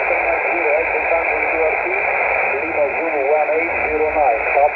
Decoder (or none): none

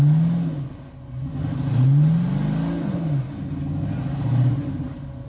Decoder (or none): none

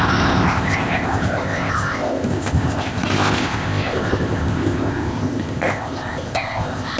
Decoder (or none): codec, ZipCodec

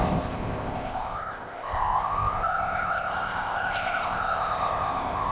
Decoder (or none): codec, ZipCodec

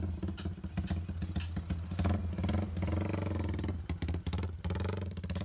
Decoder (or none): none